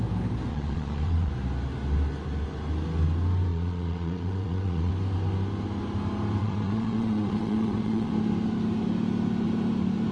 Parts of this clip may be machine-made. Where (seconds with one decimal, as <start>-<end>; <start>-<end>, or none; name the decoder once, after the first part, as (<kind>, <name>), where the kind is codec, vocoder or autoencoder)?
0.5-1.3 (vocoder, Vocos); 3.5-4.9; 6.4-8.1